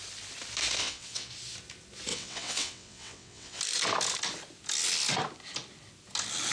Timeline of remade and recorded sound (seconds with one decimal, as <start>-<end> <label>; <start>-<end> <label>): 0.0-0.8 recorded; 0.8-1.3 remade; 1.3-2.1 recorded; 2.1-3.6 remade; 3.6-6.5 recorded